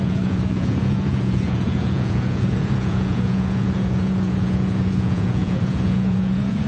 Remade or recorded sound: remade